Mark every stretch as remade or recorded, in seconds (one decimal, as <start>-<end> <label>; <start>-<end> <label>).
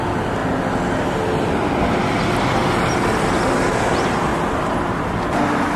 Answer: 0.0-2.6 recorded; 2.6-3.5 remade; 3.5-4.3 recorded; 4.3-5.1 remade; 5.1-5.8 recorded